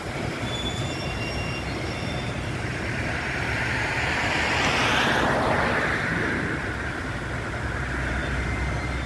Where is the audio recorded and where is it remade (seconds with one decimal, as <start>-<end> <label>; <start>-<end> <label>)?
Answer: 0.0-9.1 recorded